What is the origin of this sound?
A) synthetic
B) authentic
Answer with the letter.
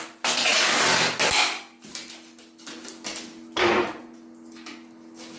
B